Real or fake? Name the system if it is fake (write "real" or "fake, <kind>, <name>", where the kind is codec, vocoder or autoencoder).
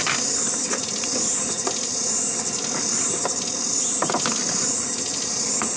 real